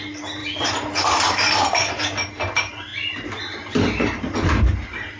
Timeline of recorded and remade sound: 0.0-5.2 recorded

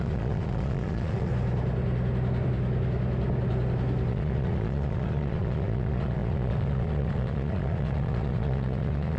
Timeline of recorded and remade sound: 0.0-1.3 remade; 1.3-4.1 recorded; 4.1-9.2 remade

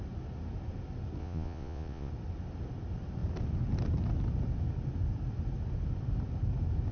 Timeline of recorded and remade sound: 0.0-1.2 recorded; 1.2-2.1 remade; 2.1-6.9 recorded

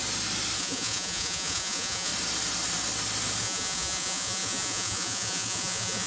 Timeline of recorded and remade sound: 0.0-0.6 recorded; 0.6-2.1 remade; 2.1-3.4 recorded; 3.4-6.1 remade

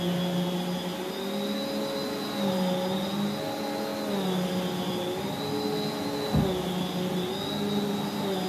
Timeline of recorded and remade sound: 0.0-8.5 recorded

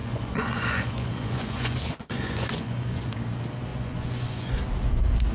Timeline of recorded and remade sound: 0.0-3.1 remade; 3.1-3.7 recorded; 3.7-4.6 remade; 4.6-5.3 recorded

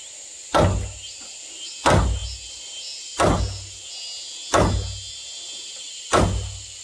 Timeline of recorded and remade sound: 0.0-6.8 recorded